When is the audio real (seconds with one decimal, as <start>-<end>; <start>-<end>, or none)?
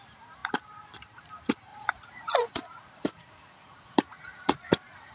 0.0-1.7